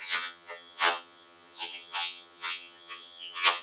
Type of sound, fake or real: fake